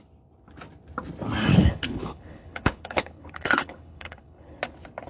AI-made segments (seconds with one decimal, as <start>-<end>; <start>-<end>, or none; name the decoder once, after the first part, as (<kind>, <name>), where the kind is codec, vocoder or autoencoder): 1.5-4.6 (codec, HILCodec)